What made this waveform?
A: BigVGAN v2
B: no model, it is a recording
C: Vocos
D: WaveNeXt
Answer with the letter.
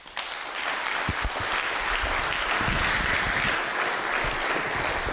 B